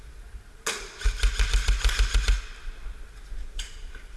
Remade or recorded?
recorded